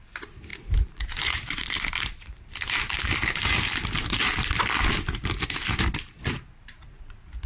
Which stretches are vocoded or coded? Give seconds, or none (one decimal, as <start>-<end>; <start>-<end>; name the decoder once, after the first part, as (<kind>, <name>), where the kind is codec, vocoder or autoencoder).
none